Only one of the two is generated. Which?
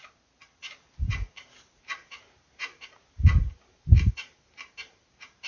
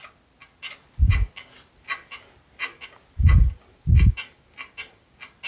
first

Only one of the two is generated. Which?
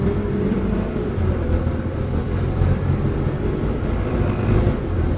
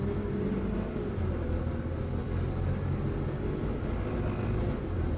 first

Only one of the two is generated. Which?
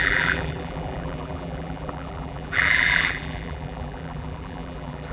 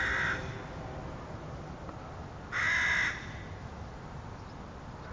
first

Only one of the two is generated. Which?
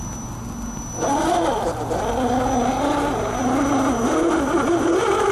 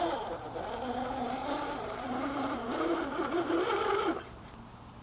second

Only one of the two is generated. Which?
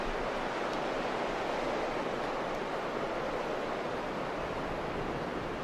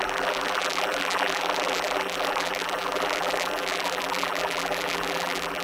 second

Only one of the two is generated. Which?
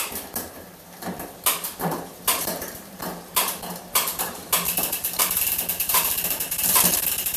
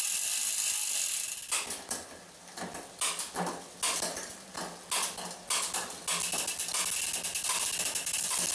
first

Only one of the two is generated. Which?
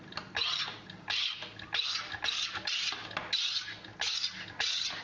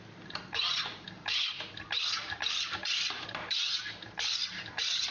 second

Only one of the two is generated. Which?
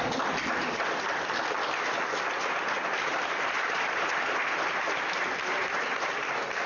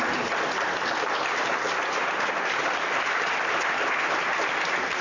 first